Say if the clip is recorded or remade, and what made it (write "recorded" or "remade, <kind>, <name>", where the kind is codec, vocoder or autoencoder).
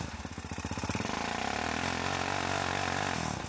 recorded